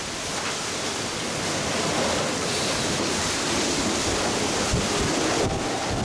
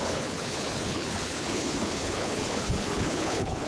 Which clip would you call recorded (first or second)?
first